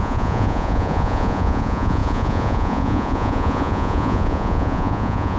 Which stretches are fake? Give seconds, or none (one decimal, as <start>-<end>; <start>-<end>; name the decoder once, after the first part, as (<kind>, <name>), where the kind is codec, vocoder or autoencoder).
0.0-5.4 (vocoder, Vocos)